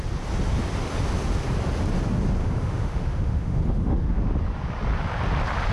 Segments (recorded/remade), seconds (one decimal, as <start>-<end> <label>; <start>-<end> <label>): 0.0-2.4 recorded; 2.4-4.3 remade; 4.3-5.7 recorded